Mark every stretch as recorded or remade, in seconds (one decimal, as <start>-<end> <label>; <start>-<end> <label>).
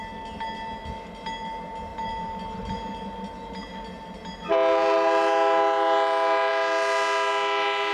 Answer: 0.0-7.9 recorded